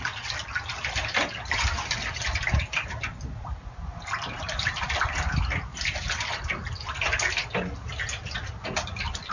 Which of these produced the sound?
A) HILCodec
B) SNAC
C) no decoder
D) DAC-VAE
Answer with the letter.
C